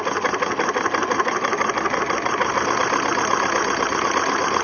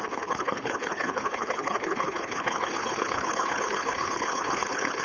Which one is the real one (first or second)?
first